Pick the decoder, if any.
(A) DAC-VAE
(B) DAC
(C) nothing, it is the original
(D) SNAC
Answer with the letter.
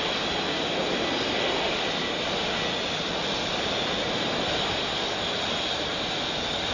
C